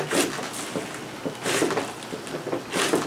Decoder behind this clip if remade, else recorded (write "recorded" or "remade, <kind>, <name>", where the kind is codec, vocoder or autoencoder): recorded